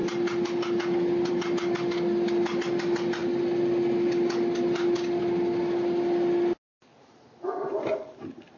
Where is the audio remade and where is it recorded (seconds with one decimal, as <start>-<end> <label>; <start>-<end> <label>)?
0.0-6.9 recorded; 6.9-7.5 remade; 7.5-8.6 recorded